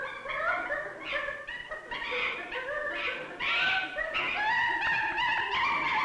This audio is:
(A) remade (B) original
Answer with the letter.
B